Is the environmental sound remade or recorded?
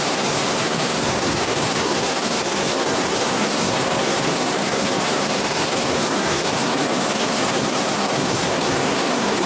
remade